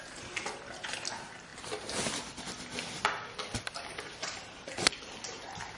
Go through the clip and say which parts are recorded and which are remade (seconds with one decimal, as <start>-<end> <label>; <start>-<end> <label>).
0.0-5.8 remade